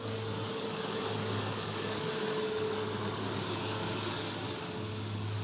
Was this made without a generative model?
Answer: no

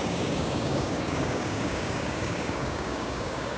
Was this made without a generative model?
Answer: no